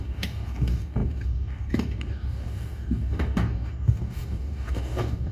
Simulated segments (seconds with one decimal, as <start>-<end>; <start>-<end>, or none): 0.0-5.3